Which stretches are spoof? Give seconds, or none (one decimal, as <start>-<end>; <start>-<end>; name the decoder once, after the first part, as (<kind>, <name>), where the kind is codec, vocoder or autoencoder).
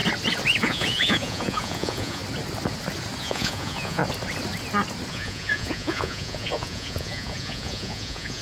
0.6-2.2 (vocoder, Vocos); 3.2-4.0; 5.1-8.4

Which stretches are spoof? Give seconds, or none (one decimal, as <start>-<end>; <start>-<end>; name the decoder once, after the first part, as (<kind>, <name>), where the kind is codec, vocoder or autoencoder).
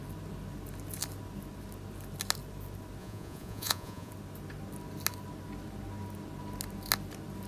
3.0-4.1 (vocoder, Vocos)